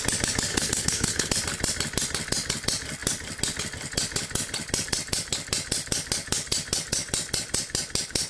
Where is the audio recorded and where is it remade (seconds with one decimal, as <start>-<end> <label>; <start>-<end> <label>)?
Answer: 0.0-0.5 recorded; 0.5-1.3 remade; 1.3-8.3 recorded